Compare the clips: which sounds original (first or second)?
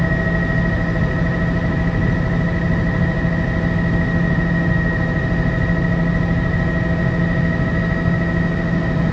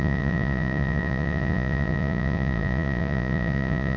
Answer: first